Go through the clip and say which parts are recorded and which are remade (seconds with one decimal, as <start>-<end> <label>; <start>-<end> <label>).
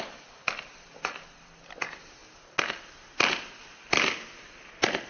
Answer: 0.0-5.1 recorded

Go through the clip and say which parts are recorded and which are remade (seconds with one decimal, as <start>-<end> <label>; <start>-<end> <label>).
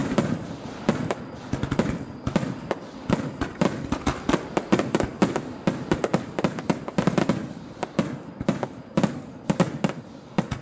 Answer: 0.0-10.6 recorded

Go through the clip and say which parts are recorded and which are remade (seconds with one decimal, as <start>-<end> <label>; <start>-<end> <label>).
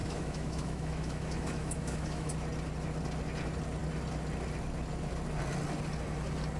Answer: 0.0-2.3 remade; 2.3-6.6 recorded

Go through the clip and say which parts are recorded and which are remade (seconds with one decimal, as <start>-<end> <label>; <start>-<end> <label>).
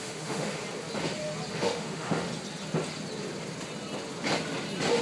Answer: 0.0-0.6 remade; 0.6-1.5 recorded; 1.5-2.3 remade; 2.3-5.0 recorded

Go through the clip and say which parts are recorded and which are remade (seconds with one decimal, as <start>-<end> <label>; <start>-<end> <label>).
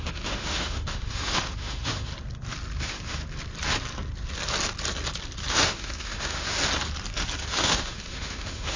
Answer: 0.0-2.1 remade; 2.1-2.8 recorded; 2.8-3.2 remade; 3.2-5.5 recorded; 5.5-6.6 remade; 6.6-7.4 recorded; 7.4-8.8 remade